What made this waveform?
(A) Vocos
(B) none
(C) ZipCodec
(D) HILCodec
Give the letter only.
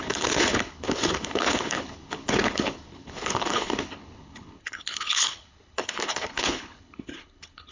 D